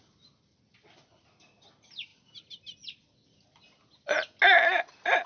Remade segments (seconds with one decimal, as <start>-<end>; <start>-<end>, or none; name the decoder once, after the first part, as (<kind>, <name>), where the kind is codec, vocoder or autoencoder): none